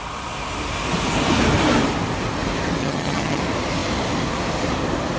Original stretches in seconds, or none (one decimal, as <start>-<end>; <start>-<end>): 0.0-2.8; 3.4-5.2